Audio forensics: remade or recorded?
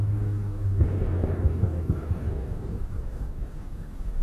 remade